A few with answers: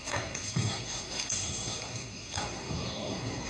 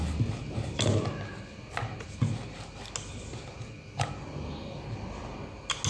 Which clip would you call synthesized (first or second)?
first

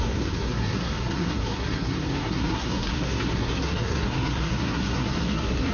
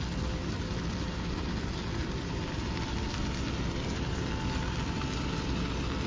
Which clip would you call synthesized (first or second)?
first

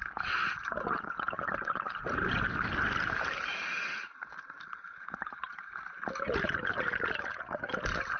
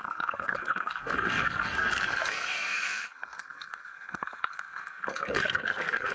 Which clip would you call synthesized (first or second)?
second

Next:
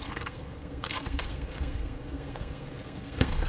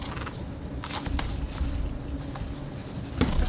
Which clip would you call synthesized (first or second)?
first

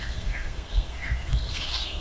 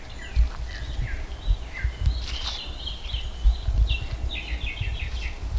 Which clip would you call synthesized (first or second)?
first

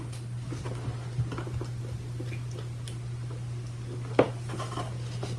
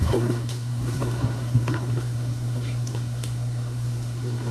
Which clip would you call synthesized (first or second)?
second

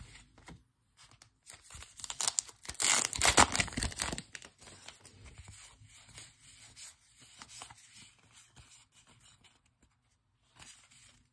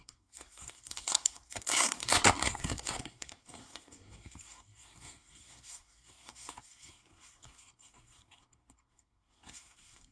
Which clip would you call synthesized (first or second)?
second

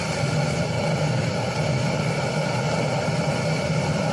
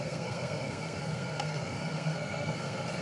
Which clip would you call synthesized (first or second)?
second